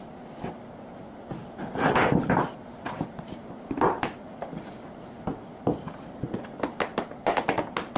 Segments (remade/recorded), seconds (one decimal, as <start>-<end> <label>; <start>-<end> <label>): 0.0-8.0 recorded